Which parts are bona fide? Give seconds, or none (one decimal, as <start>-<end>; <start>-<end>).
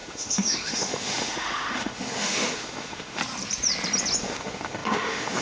3.2-4.2